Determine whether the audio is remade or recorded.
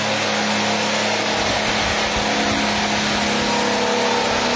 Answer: recorded